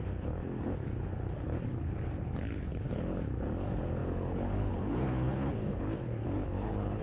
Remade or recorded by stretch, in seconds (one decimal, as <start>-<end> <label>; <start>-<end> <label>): 0.0-7.0 remade